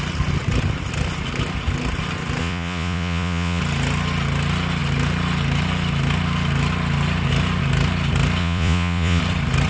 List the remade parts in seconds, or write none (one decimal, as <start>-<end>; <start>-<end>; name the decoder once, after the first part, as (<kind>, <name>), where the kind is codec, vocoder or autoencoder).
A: 2.4-3.6 (vocoder, Vocos); 8.4-9.2